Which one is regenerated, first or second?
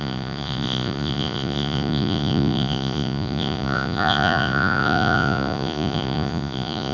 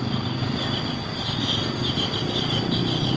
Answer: first